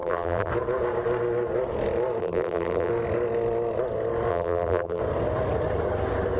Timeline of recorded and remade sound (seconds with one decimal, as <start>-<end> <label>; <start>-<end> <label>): 0.0-0.5 remade; 0.5-2.2 recorded; 2.2-2.9 remade; 2.9-4.3 recorded; 4.3-5.0 remade; 5.0-6.4 recorded

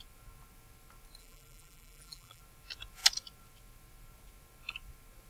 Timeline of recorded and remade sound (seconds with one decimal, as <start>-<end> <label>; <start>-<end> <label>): 0.0-1.2 recorded; 1.2-2.4 remade; 2.4-5.3 recorded

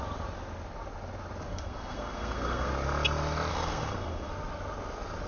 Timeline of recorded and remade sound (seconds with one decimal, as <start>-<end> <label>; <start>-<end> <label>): 0.0-1.5 recorded; 1.5-2.7 remade; 2.7-3.5 recorded; 3.5-4.3 remade; 4.3-5.3 recorded